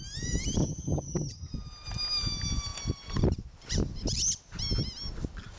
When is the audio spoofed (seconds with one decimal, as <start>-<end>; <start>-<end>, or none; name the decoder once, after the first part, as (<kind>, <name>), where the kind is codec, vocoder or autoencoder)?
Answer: 0.6-1.5 (vocoder, HiFi-GAN)